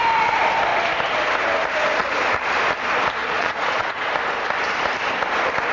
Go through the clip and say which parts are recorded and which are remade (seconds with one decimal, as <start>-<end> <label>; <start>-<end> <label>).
0.0-3.2 recorded; 3.2-4.1 remade; 4.1-5.7 recorded